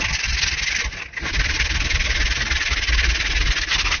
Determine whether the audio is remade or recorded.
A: recorded